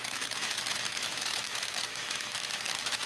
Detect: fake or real fake